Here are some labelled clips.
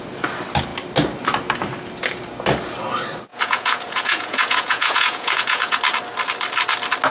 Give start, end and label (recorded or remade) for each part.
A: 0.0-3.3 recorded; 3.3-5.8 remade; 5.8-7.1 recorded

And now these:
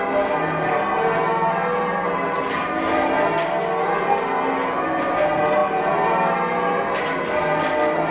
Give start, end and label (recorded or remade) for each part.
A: 0.0-8.1 recorded